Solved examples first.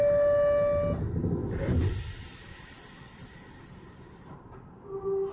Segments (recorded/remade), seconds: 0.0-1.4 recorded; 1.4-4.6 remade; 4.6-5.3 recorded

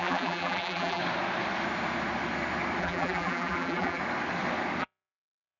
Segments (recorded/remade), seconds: 0.0-1.0 remade; 1.0-2.8 recorded; 2.8-4.0 remade; 4.0-4.8 recorded; 4.8-5.6 remade

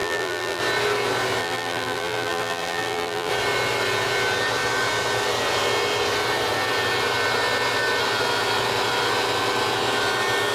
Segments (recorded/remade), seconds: 0.0-0.6 remade; 0.6-1.4 recorded; 1.4-3.3 remade; 3.3-10.5 recorded

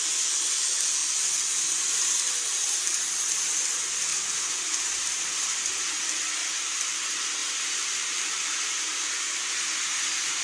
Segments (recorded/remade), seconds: 0.0-4.1 recorded; 4.1-5.5 remade; 5.5-7.4 recorded; 7.4-10.4 remade

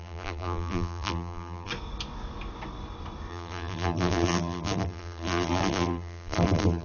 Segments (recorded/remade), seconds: 0.0-1.7 remade; 1.7-3.3 recorded; 3.3-6.8 remade

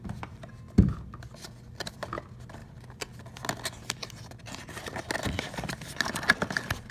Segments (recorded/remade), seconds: 0.0-2.6 recorded; 2.6-3.1 remade; 3.1-6.9 recorded

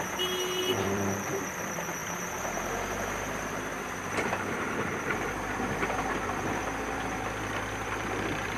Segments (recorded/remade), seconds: 0.0-8.6 remade

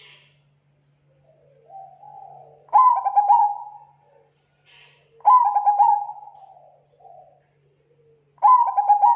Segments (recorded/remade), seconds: 0.0-9.2 recorded